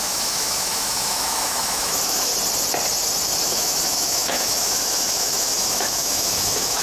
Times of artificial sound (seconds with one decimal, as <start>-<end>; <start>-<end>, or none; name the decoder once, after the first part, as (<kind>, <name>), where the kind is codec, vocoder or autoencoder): 0.0-2.3 (autoencoder, DAC-VAE); 3.4-6.8